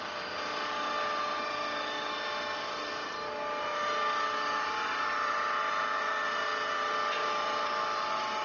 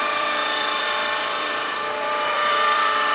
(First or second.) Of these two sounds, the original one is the first